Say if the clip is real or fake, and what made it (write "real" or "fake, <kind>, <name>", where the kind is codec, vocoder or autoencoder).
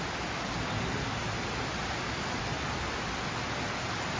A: real